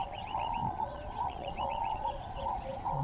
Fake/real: fake